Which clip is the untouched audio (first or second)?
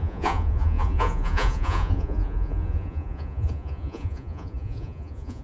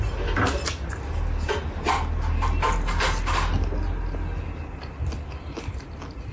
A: second